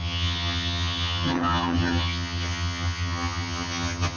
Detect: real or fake fake